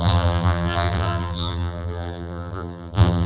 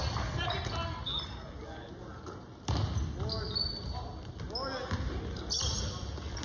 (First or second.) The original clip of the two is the second